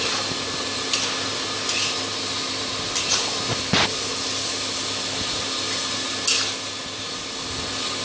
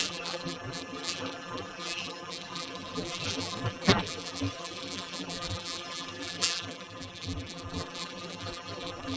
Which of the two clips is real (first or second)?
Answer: first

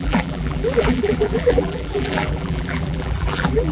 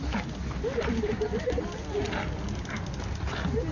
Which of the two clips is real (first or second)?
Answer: second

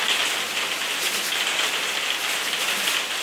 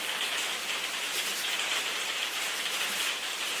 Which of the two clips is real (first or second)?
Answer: first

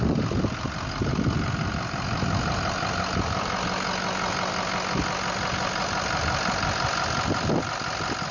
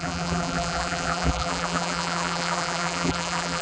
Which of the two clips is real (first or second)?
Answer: first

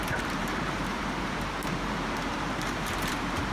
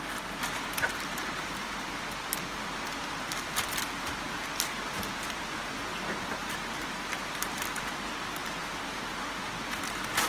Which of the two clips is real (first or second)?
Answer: second